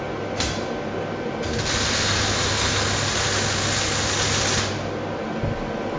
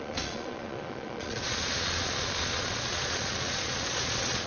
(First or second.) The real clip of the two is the first